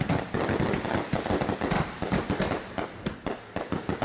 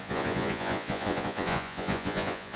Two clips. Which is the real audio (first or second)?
first